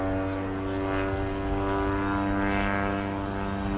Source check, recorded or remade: recorded